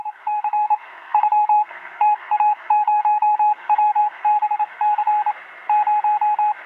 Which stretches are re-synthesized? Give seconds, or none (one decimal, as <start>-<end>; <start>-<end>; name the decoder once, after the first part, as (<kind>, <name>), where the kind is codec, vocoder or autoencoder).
0.0-5.1 (codec, SNAC)